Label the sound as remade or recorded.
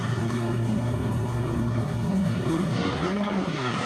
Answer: remade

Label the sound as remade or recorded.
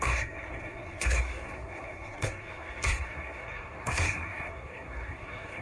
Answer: remade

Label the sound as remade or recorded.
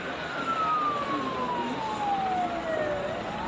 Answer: recorded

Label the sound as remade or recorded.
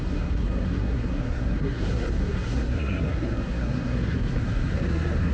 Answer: remade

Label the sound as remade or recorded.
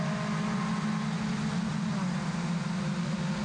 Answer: recorded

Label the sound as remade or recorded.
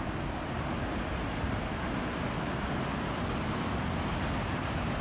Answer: recorded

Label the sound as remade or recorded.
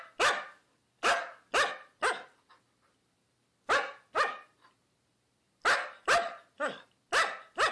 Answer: recorded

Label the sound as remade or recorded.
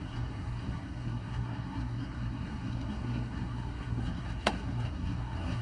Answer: remade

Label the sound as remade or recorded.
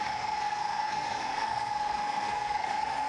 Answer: remade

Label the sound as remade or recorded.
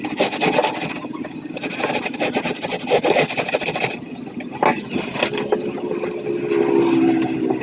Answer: recorded